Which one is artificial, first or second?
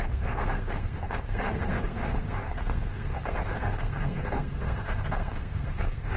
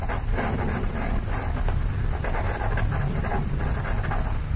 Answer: first